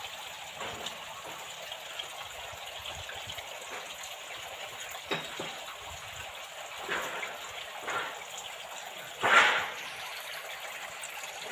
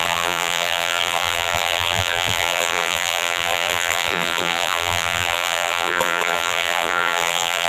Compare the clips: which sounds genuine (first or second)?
first